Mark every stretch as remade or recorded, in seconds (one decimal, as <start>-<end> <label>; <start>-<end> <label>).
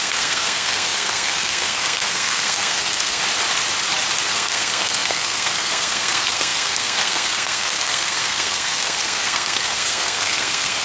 0.0-3.2 remade; 3.2-4.3 recorded; 4.3-10.8 remade